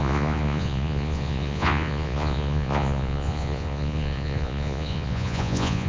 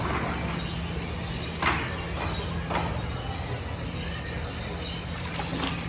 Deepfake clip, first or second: first